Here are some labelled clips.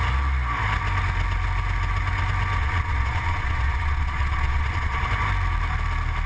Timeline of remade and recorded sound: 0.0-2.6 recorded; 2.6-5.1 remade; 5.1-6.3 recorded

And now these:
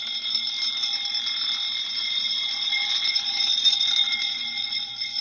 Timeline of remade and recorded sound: 0.0-1.9 recorded; 1.9-5.2 remade

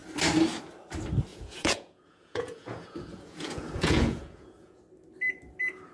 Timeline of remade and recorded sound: 0.0-1.3 recorded; 1.3-4.8 remade; 4.8-5.9 recorded

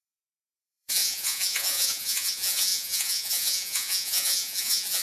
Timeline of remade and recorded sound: 0.0-5.0 remade

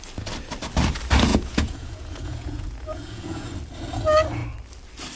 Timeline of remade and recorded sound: 0.0-1.3 recorded; 1.3-3.5 remade; 3.5-5.2 recorded

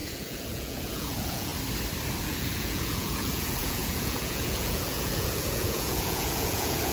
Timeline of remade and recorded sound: 0.0-1.5 remade; 1.5-2.2 recorded; 2.2-6.9 remade